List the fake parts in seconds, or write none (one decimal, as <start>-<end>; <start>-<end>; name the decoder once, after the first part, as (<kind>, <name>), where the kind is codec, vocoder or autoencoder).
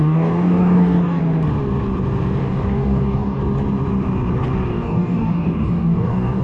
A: 0.0-1.2 (codec, DAC); 2.4-3.4; 4.7-6.4